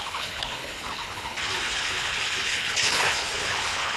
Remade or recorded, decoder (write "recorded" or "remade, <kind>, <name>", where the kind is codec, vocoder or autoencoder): remade, codec, HILCodec